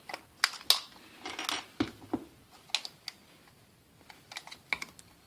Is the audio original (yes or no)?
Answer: yes